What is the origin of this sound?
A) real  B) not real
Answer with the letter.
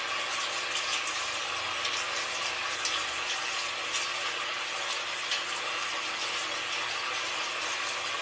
A